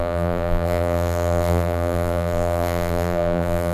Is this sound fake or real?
fake